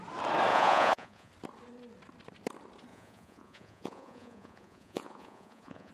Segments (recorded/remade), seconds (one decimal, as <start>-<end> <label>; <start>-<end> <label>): 0.0-0.5 recorded; 0.5-1.3 remade; 1.3-2.9 recorded; 2.9-5.9 remade